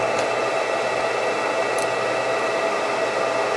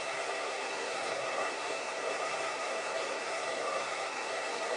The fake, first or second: second